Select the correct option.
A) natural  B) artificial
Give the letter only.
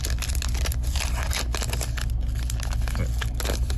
A